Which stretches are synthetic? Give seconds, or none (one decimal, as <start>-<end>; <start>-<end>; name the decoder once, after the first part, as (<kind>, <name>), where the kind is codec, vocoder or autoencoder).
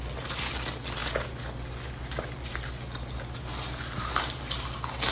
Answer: none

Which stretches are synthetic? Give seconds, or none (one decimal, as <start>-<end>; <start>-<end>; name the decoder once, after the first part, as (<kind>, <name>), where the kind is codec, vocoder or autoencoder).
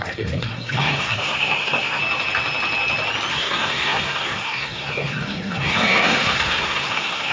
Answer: 0.0-2.0 (codec, SNAC); 3.3-7.3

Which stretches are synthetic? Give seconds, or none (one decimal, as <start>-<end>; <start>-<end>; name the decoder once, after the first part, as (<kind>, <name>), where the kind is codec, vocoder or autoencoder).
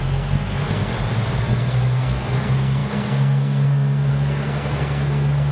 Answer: 0.0-0.9 (codec, SNAC); 1.4-5.5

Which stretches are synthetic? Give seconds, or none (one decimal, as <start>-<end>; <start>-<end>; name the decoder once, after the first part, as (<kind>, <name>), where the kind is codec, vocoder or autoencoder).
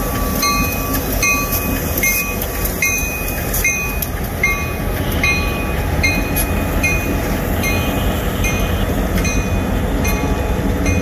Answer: none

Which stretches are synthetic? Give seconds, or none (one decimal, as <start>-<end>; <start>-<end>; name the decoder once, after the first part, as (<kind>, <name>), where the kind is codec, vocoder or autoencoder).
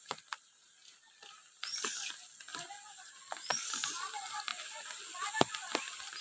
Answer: none